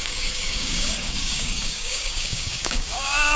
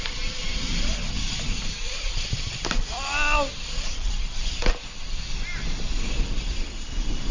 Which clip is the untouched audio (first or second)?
second